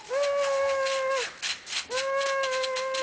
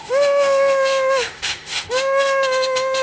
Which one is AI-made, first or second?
second